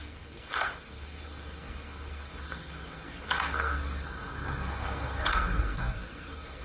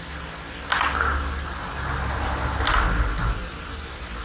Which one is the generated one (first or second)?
first